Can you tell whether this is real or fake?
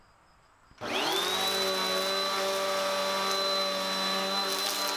real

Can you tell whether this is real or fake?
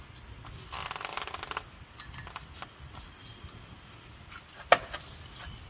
real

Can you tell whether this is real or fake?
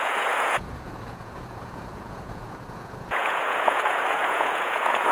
fake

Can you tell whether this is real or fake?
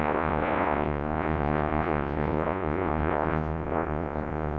fake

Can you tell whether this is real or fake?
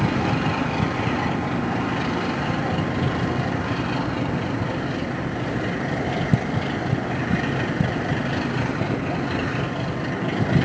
real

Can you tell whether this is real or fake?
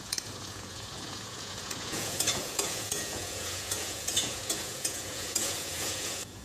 fake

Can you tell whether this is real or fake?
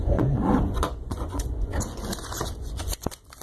fake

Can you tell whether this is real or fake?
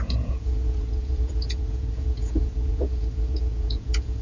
fake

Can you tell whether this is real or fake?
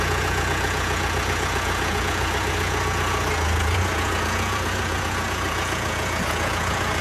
fake